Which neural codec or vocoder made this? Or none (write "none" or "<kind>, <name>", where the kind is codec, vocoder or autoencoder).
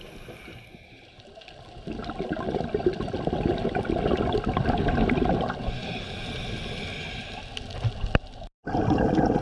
none